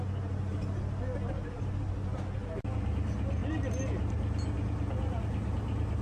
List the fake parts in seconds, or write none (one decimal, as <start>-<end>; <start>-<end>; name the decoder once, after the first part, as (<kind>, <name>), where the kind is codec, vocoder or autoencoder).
none